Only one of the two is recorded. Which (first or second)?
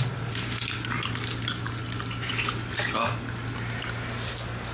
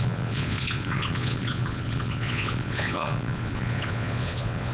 first